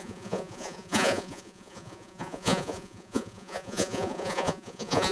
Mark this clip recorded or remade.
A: remade